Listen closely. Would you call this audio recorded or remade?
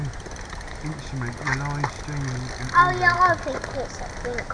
recorded